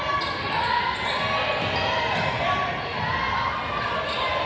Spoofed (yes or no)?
no